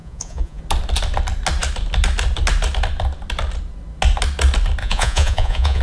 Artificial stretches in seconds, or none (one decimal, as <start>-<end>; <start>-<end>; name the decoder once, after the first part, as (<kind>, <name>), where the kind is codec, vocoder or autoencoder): 0.0-0.6 (vocoder, Vocos); 4.8-5.8